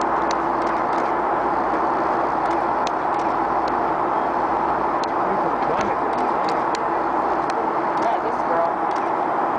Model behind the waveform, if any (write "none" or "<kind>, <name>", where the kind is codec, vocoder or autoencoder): none